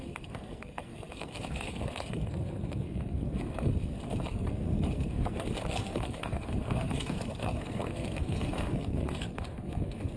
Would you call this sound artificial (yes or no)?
yes